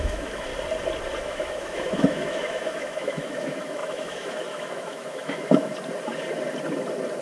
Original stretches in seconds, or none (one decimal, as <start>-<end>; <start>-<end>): 0.5-1.2; 5.7-7.2